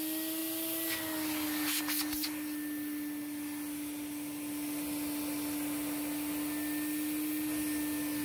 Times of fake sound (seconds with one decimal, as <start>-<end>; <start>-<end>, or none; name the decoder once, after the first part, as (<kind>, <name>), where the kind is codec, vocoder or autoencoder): none